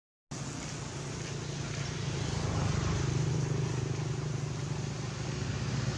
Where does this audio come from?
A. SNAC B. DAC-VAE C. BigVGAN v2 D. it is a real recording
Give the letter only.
D